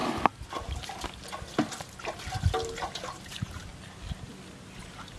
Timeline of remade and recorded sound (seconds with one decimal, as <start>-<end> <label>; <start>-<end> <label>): 0.0-3.1 recorded; 3.1-3.7 remade; 3.7-4.8 recorded; 4.8-5.2 remade